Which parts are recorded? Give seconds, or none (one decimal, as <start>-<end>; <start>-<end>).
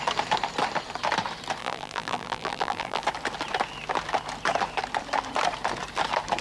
0.0-1.6; 3.0-6.4